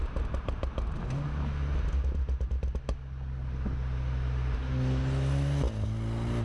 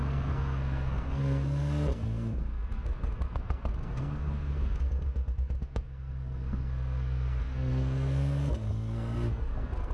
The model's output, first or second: second